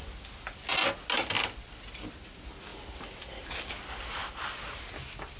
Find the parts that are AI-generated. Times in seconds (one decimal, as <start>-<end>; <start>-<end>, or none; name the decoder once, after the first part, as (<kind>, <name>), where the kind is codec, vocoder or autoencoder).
none